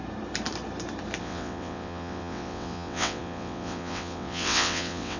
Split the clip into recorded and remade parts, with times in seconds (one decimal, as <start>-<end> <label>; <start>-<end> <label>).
0.0-1.2 recorded; 1.2-5.2 remade